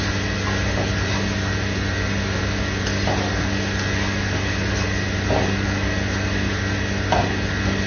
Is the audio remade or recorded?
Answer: recorded